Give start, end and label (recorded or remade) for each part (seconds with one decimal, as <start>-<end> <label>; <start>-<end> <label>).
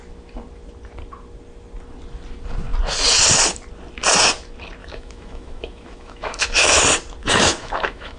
0.0-4.8 recorded; 4.8-6.8 remade; 6.8-7.2 recorded; 7.2-8.2 remade